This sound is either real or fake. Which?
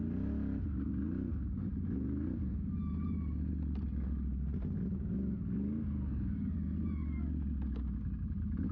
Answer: real